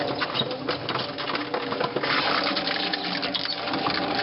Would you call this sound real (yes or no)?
yes